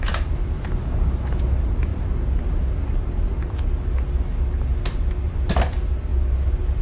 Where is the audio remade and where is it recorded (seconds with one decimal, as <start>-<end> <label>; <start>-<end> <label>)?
0.0-1.9 remade; 1.9-2.4 recorded; 2.4-3.3 remade; 3.3-5.0 recorded; 5.0-6.1 remade; 6.1-6.8 recorded